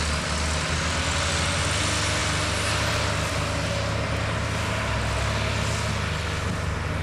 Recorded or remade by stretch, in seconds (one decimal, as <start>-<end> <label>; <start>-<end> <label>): 0.0-7.0 recorded